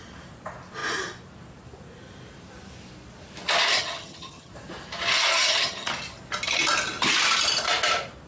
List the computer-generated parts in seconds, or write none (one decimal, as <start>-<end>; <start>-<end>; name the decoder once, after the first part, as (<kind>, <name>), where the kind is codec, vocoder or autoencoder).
3.7-4.5 (vocoder, HiFi-GAN); 5.3-5.9